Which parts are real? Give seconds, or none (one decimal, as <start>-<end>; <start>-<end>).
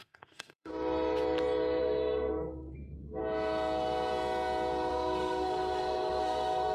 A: 0.7-1.8; 3.2-4.9